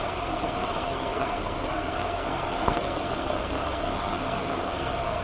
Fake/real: fake